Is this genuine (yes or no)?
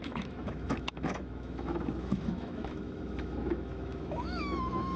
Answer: no